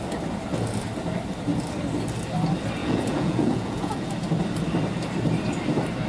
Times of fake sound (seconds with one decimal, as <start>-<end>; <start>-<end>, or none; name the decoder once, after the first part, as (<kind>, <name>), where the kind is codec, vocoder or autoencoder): 2.8-4.1 (vocoder, Vocos)